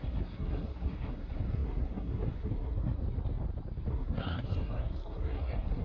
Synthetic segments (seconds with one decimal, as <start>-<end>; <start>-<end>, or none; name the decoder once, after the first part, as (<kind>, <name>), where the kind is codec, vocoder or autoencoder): 0.0-3.0 (codec, SNAC); 3.9-5.8